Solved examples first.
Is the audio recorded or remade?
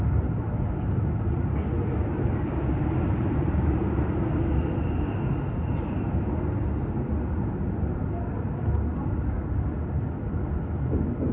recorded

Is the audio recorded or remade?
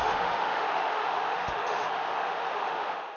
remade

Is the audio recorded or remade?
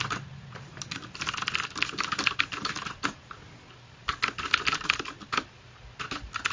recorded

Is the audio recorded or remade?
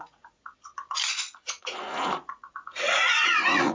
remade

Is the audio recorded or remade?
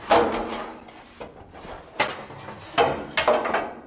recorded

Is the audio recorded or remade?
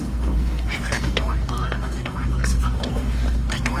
remade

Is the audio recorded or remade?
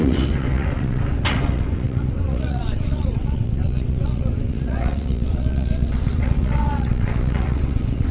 remade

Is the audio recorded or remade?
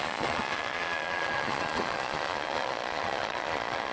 remade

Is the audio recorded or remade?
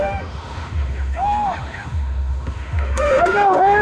remade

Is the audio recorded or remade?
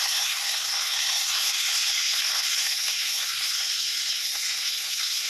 remade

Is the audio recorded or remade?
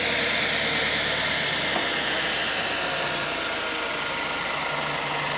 recorded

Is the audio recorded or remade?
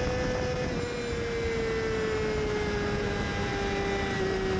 recorded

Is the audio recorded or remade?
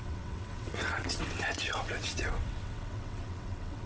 remade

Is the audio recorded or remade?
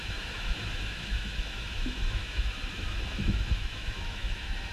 remade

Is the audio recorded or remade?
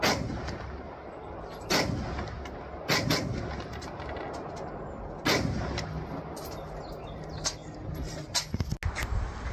recorded